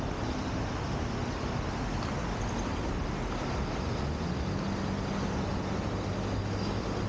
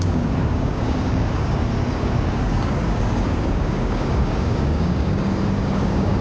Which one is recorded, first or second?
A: first